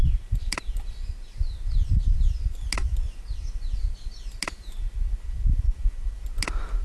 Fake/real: real